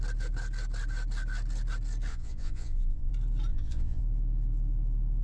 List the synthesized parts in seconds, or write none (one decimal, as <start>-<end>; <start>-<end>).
2.1-3.1; 3.5-4.0